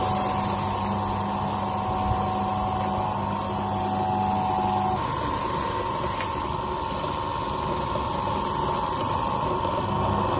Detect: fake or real real